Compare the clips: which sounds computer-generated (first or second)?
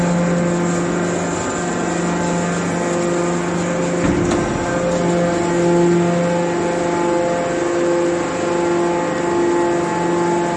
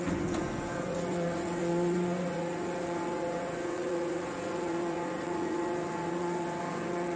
second